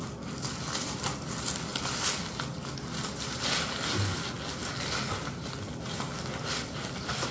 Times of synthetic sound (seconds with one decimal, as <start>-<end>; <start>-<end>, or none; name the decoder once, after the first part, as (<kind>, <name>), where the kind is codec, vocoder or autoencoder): none